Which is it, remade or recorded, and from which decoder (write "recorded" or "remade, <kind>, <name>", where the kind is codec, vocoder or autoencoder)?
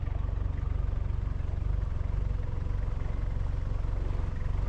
recorded